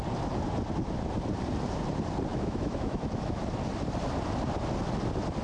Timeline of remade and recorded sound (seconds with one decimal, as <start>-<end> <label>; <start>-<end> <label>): 0.0-2.3 recorded; 2.3-3.4 remade; 3.4-5.4 recorded